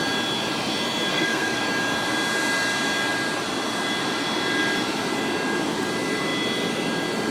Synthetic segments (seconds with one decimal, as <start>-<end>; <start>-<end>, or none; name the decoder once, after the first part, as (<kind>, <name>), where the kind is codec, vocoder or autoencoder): 1.1-1.6 (codec, SNAC)